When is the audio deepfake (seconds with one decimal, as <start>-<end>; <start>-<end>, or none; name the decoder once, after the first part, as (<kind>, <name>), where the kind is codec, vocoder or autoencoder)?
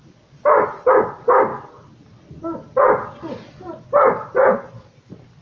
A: 0.0-1.5 (vocoder, BigVGAN v2); 4.7-5.4